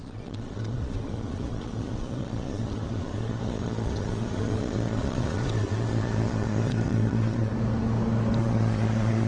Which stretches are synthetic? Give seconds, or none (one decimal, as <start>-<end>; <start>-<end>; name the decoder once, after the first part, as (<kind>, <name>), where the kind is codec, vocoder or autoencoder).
0.0-7.5 (vocoder, Vocos); 8.4-9.3